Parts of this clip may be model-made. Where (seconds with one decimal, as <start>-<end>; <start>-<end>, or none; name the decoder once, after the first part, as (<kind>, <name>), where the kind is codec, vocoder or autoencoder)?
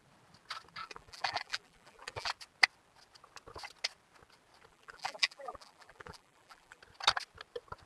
0.8-2.3 (vocoder, BigVGAN v2); 4.7-6.8